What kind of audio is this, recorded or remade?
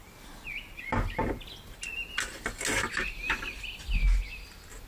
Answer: recorded